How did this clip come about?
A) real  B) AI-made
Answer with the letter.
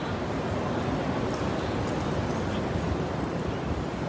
A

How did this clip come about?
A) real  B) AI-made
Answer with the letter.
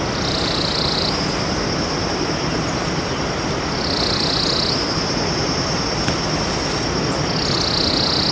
A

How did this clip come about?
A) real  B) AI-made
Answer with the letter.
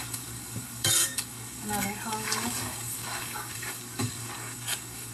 B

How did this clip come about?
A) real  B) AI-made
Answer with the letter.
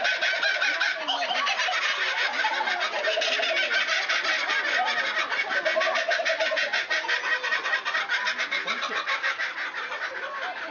A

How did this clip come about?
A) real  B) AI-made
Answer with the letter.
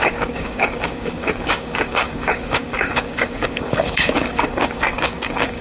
B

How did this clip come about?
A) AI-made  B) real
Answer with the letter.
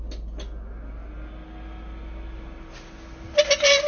B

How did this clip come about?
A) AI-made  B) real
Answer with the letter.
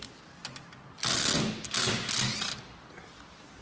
B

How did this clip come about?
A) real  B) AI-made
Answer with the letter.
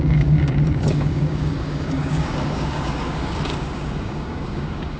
B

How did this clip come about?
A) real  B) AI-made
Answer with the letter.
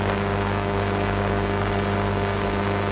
B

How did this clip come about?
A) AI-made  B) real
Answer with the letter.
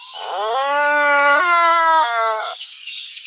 A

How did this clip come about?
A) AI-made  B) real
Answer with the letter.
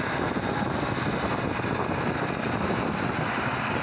B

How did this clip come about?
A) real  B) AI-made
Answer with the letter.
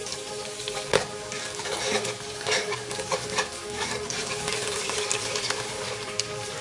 B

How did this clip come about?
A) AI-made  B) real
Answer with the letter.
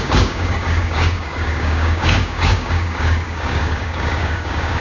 A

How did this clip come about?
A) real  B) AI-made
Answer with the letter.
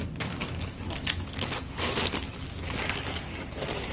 B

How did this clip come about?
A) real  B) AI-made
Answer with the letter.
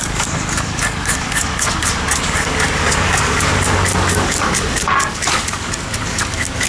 B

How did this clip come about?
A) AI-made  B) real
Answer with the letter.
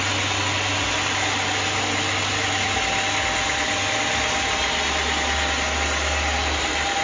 B